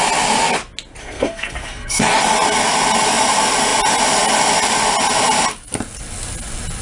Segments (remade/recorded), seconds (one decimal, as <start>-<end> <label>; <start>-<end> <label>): 0.0-1.0 recorded; 1.0-2.0 remade; 2.0-6.8 recorded